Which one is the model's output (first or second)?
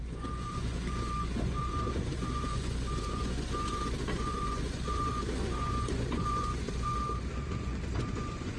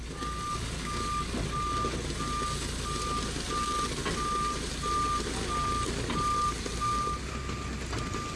first